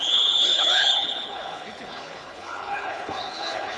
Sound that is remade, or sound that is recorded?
remade